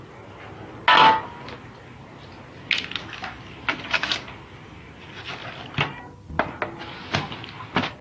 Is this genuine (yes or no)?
yes